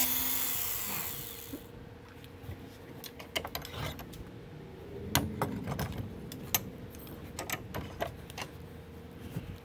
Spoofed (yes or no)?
no